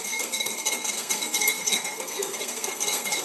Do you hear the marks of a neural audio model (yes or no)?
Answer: yes